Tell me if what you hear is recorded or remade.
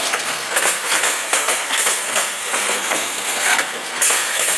remade